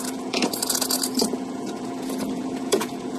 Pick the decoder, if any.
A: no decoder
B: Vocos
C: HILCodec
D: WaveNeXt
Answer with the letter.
B